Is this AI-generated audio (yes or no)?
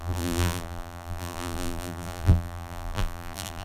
yes